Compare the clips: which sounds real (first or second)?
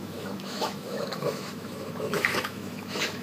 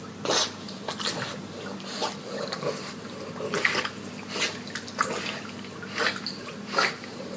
second